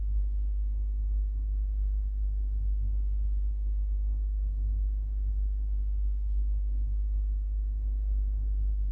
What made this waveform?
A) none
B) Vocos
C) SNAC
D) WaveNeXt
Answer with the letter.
C